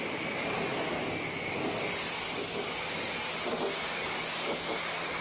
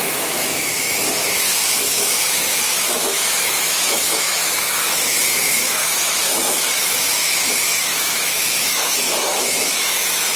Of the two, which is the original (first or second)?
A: first